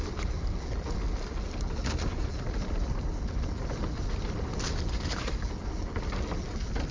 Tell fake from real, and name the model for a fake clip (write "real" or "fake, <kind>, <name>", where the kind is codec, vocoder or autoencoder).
real